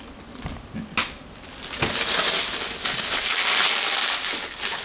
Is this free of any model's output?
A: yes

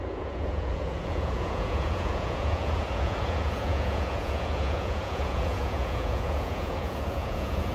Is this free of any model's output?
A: no